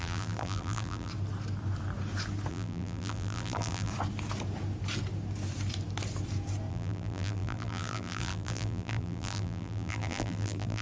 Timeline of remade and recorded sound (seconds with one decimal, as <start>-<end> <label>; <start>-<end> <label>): 0.0-1.1 remade; 1.1-2.5 recorded; 2.5-3.9 remade; 3.9-6.7 recorded; 6.7-10.8 remade